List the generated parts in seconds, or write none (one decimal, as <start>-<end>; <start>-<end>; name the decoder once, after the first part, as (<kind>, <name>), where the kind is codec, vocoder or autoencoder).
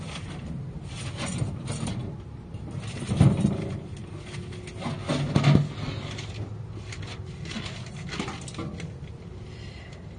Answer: none